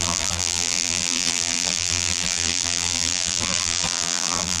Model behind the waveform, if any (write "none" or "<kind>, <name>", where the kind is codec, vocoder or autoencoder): vocoder, BigVGAN v2